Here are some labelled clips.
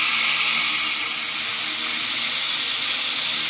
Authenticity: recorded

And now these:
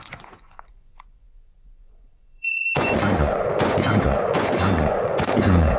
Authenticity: remade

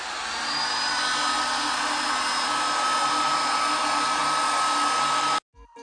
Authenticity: recorded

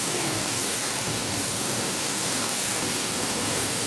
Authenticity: remade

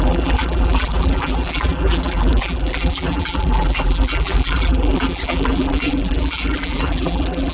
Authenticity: remade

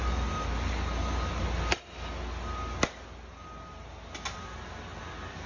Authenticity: recorded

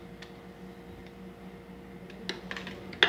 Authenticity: recorded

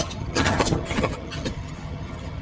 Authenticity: remade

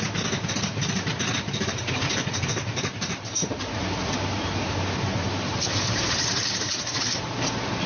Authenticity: remade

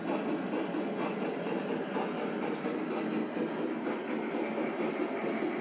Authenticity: recorded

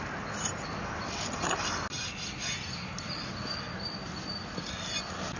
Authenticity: recorded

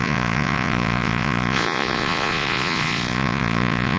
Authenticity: remade